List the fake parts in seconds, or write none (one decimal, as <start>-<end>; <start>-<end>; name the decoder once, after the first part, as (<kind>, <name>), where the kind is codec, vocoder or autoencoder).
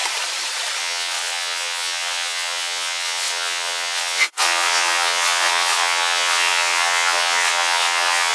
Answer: 0.8-8.3 (vocoder, WaveNeXt)